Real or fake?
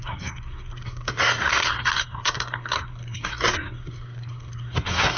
fake